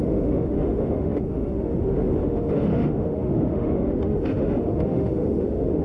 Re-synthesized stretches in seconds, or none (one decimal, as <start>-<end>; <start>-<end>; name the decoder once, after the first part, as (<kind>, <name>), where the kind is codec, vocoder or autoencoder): 0.0-5.8 (autoencoder, DAC-VAE)